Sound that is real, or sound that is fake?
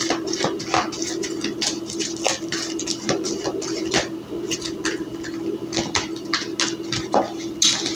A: real